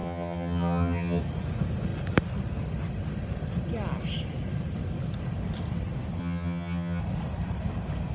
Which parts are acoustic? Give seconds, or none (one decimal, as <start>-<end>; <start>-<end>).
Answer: 1.2-6.2; 7.0-8.1